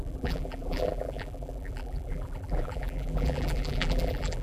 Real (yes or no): no